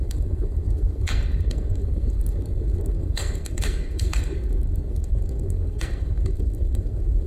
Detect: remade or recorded remade